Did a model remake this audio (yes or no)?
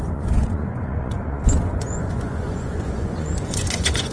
yes